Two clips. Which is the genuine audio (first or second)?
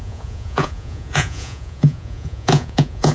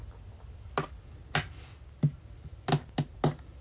second